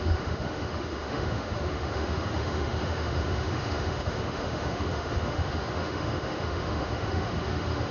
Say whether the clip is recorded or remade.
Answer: remade